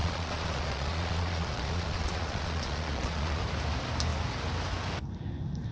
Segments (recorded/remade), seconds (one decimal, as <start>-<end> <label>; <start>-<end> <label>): 0.0-3.4 remade; 3.4-5.7 recorded